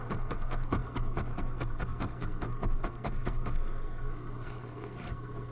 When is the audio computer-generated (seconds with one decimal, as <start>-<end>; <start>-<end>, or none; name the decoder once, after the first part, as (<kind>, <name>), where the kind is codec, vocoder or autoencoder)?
0.0-5.5 (codec, SNAC)